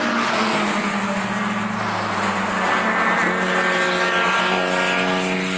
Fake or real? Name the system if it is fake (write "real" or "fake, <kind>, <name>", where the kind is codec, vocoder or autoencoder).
real